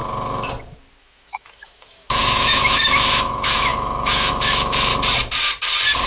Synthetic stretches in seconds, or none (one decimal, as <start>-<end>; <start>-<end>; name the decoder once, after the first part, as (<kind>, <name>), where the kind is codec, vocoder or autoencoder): 1.0-4.9 (autoencoder, DAC-VAE)

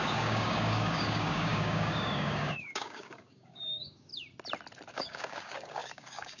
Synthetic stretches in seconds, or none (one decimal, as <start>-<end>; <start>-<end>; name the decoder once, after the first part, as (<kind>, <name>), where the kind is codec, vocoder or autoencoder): 0.0-4.1 (codec, DAC); 4.9-6.4

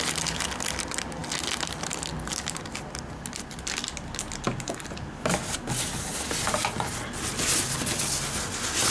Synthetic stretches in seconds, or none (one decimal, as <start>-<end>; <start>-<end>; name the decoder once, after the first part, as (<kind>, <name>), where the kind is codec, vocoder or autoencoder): none

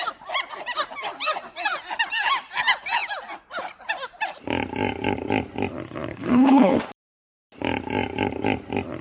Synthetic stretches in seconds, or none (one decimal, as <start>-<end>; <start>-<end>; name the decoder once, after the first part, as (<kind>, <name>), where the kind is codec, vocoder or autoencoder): 6.1-6.8 (codec, HILCodec)